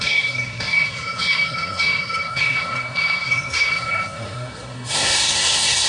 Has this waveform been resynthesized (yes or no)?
yes